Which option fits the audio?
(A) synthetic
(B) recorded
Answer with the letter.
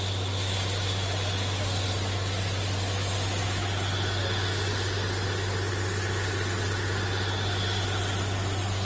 B